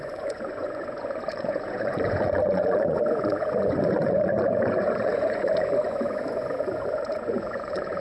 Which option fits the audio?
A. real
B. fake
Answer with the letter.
B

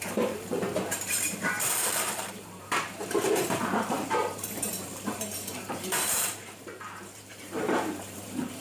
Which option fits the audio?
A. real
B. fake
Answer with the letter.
B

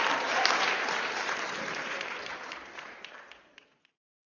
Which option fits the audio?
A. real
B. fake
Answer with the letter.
B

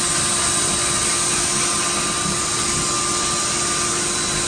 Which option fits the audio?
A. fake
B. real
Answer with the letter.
B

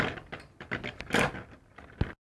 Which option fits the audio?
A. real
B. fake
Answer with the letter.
A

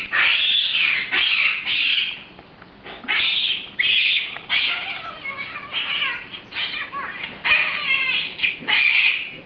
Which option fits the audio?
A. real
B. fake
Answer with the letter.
B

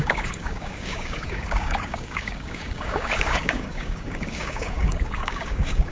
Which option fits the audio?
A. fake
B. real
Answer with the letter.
A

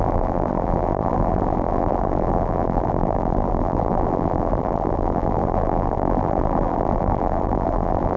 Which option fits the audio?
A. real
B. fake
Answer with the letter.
B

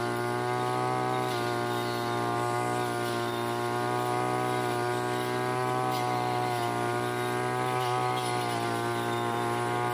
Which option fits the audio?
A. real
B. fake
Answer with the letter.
A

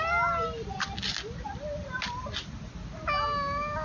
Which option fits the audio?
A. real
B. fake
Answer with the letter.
A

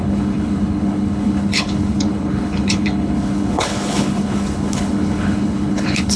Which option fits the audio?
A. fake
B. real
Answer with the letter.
A